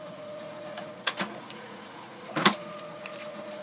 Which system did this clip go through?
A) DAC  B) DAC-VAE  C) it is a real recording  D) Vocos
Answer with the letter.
D